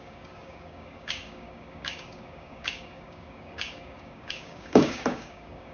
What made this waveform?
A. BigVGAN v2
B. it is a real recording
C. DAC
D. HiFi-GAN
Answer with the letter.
C